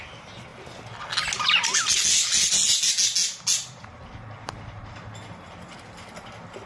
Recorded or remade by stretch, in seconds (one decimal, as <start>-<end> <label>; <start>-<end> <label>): 0.0-6.7 recorded